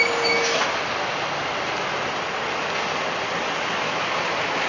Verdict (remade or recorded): recorded